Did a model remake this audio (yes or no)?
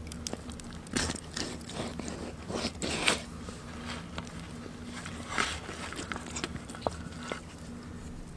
no